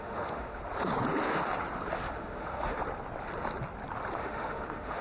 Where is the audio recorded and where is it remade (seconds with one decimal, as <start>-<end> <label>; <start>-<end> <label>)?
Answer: 0.0-0.6 remade; 0.6-1.9 recorded; 1.9-2.8 remade; 2.8-4.2 recorded; 4.2-5.0 remade